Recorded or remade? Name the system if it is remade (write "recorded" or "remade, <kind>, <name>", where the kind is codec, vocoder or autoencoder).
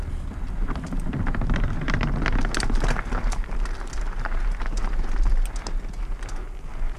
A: recorded